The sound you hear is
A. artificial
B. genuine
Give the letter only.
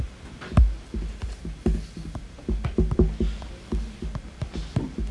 B